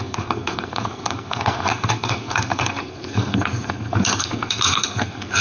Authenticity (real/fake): fake